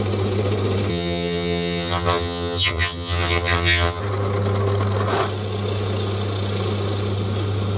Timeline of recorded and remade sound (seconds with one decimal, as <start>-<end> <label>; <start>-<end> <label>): 0.0-0.9 recorded; 0.9-4.0 remade; 4.0-7.8 recorded